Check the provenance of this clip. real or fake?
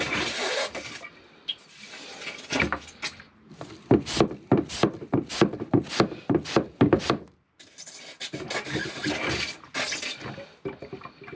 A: real